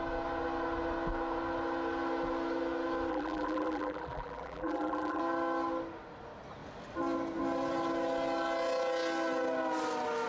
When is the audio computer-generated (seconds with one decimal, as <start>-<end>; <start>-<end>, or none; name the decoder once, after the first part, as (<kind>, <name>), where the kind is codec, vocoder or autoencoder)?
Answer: 3.1-5.2 (vocoder, BigVGAN v2)